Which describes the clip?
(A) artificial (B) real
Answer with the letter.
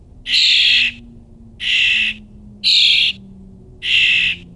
B